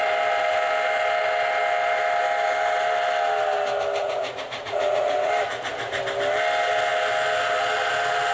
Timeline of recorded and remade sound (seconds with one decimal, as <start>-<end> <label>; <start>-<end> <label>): 0.0-4.0 recorded; 4.0-5.3 remade; 5.3-8.3 recorded